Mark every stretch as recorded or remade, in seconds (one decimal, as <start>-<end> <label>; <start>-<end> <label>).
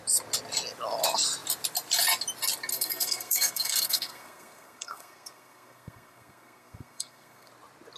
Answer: 0.0-2.7 recorded; 2.7-7.5 remade; 7.5-8.0 recorded